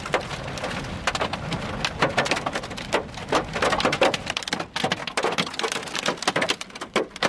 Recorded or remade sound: recorded